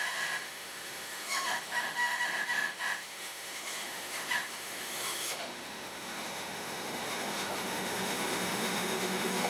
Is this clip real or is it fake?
fake